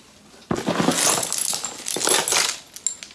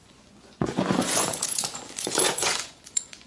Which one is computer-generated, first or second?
second